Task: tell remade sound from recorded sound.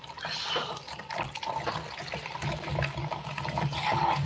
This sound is recorded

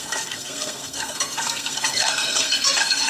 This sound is remade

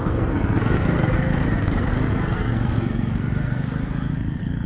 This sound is remade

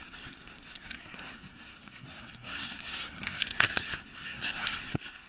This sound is remade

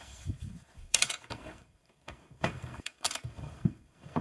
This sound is remade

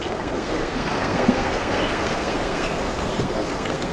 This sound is remade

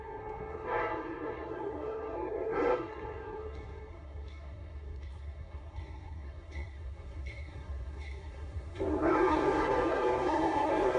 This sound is remade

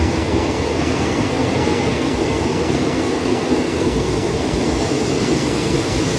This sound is remade